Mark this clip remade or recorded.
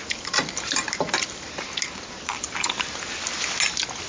recorded